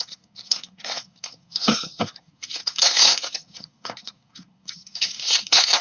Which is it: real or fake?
fake